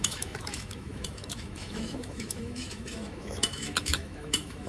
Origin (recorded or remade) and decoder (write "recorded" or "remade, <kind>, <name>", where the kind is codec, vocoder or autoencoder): remade, autoencoder, DAC-VAE